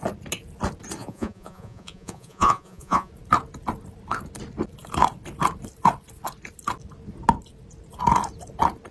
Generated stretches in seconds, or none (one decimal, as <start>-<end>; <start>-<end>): 1.0-3.1